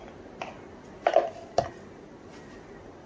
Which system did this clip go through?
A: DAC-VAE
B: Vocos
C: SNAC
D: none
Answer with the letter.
D